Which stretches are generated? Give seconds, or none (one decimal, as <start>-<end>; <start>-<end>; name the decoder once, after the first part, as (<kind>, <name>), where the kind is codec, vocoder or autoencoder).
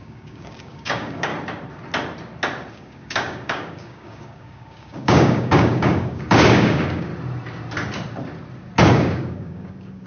0.0-1.3 (codec, DAC); 2.7-7.1; 8.9-10.1